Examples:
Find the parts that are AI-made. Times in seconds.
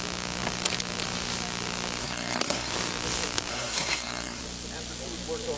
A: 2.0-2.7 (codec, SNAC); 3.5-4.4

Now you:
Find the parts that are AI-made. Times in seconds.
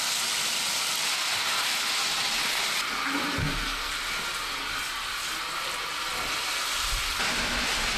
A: 3.4-3.9 (codec, SNAC)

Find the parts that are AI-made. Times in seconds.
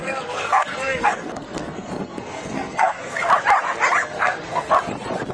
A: 0.0-3.2 (codec, SNAC); 4.0-4.7